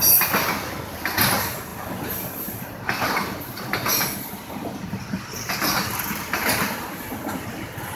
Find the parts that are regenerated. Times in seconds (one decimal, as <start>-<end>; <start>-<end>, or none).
none

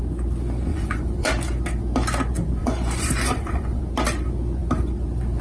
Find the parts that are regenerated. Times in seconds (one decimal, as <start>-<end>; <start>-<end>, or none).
0.7-1.3; 2.6-3.8

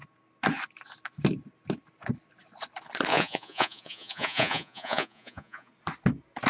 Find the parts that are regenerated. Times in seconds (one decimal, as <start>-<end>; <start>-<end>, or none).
3.1-5.7

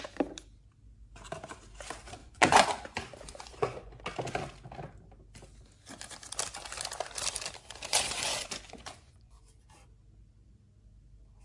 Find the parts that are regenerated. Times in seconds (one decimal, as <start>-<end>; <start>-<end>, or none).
2.2-4.0; 7.9-9.6

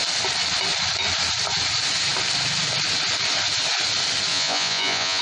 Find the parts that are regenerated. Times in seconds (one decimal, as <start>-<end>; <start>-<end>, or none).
4.3-5.2

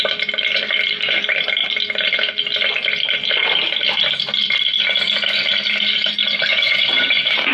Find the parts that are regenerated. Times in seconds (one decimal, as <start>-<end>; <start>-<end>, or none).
6.5-7.5